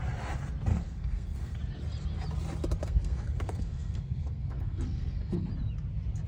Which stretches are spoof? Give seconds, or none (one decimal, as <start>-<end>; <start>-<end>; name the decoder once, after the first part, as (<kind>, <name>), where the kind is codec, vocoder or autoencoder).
0.7-1.6 (codec, SNAC); 2.8-5.5